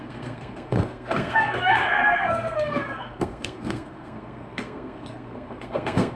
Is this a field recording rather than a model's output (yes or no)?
no